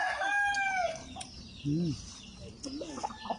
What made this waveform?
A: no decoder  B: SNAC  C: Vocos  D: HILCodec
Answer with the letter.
A